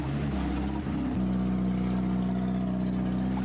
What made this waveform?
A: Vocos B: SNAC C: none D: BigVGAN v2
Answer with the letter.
C